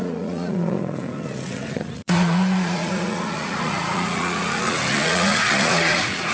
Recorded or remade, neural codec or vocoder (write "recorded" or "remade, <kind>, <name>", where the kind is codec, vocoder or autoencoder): remade, vocoder, Vocos